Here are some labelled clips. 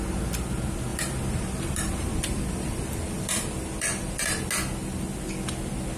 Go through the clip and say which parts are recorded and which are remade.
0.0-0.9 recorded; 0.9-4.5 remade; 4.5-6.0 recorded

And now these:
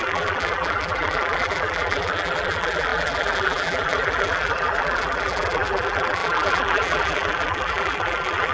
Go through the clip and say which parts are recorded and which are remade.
0.0-8.5 remade

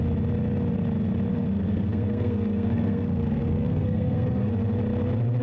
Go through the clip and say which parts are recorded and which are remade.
0.0-1.3 recorded; 1.3-4.5 remade; 4.5-5.4 recorded

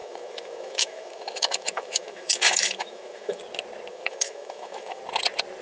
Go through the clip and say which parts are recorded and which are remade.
0.0-3.4 remade; 3.4-3.9 recorded; 3.9-5.0 remade; 5.0-5.6 recorded

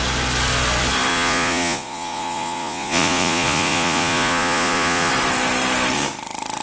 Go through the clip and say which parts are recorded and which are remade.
0.0-1.1 recorded; 1.1-5.1 remade; 5.1-6.6 recorded